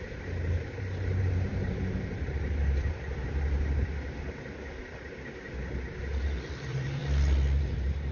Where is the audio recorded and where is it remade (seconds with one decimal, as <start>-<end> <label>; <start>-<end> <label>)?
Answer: 0.0-3.2 remade; 3.2-6.0 recorded; 6.0-7.0 remade; 7.0-7.6 recorded; 7.6-8.1 remade